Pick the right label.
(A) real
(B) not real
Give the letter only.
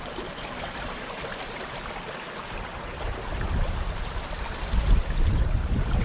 A